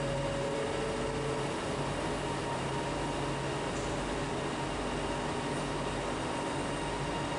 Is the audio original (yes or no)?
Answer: yes